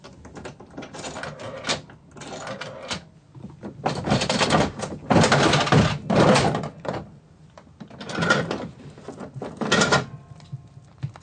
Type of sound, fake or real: real